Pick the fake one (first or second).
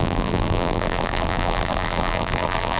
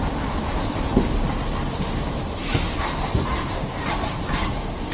first